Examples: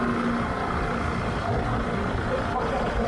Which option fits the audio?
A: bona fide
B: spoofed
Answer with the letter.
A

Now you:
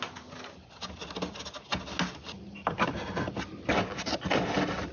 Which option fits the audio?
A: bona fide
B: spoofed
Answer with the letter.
A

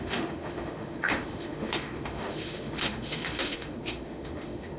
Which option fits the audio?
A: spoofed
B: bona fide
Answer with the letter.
A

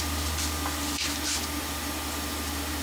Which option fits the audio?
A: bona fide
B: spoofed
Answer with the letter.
A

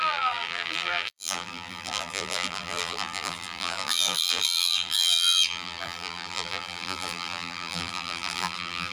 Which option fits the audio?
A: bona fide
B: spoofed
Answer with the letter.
B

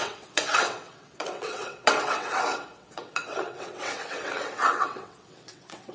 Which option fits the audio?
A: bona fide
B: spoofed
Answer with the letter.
B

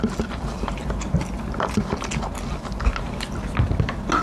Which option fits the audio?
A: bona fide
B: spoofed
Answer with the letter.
A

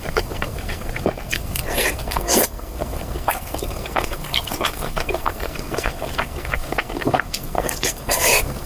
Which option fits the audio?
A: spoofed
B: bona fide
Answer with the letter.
A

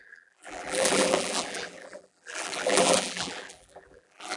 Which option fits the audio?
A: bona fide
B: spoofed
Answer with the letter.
B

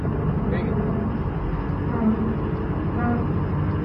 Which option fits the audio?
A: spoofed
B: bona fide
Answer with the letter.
B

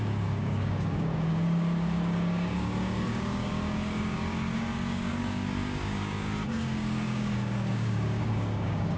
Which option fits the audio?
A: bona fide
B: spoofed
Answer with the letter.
B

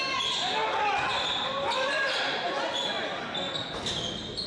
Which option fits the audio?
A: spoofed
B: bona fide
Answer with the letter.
B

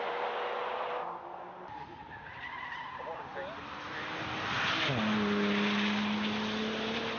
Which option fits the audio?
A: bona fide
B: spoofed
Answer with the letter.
A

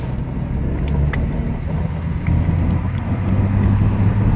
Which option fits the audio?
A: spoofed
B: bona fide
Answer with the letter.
B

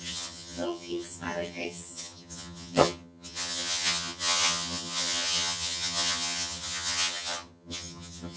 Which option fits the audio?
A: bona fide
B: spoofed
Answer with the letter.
B